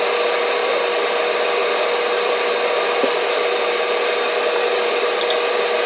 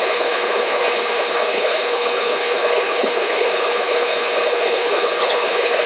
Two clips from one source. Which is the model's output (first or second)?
second